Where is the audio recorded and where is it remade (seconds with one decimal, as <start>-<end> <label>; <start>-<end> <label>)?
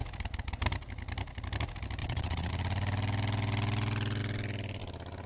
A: 0.0-2.0 recorded; 2.0-2.5 remade; 2.5-5.3 recorded